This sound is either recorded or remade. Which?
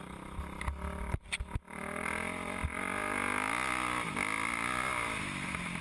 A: recorded